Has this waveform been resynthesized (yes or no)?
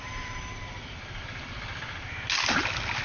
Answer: no